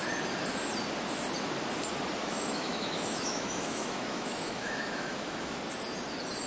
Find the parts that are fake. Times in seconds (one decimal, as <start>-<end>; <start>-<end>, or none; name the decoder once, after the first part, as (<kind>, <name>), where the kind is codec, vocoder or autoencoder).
2.2-5.6 (autoencoder, DAC-VAE)